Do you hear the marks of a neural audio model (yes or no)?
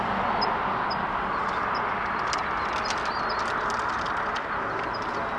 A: no